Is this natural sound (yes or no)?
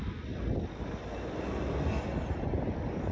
yes